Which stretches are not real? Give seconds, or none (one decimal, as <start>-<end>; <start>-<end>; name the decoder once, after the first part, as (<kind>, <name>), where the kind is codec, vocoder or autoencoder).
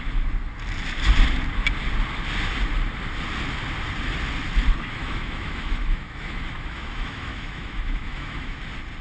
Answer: 5.0-8.6 (autoencoder, DAC-VAE)